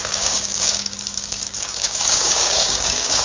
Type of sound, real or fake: fake